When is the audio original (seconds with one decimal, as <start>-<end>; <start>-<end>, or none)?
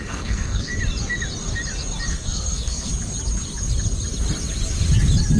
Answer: 0.7-2.1; 2.9-5.4